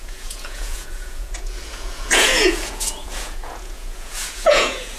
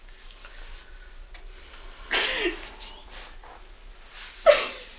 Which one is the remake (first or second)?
first